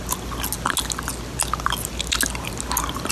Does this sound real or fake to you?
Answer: real